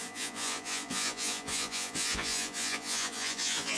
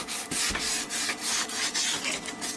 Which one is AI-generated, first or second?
first